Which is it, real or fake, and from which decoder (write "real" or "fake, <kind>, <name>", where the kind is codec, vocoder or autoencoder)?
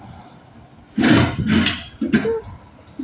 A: real